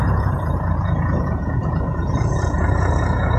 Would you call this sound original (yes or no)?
no